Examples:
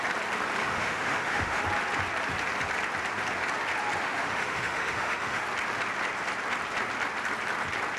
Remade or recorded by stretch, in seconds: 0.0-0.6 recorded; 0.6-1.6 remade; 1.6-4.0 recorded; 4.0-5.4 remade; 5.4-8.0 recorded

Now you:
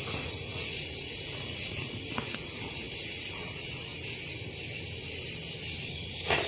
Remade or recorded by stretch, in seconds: 0.0-3.9 remade; 3.9-5.9 recorded; 5.9-6.5 remade